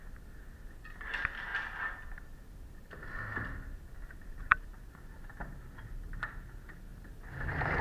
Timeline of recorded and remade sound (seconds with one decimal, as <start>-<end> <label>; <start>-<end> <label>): 0.0-7.8 recorded